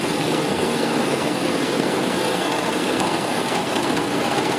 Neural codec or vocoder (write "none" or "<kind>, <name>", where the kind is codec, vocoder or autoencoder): codec, SNAC